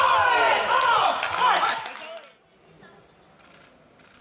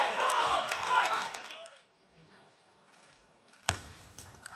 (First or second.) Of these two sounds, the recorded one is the first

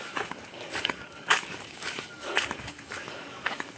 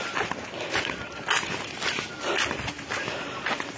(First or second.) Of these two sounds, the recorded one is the second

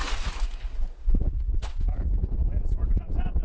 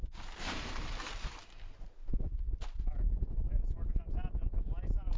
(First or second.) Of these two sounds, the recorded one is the second